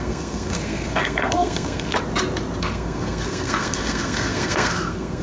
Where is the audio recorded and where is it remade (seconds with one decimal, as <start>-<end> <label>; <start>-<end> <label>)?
0.0-1.9 remade; 1.9-2.6 recorded; 2.6-5.2 remade